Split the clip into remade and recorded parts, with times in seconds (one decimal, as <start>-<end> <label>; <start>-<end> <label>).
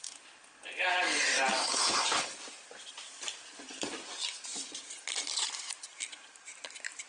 0.0-1.6 recorded; 1.6-2.3 remade; 2.3-7.1 recorded